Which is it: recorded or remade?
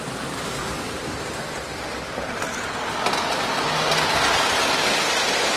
recorded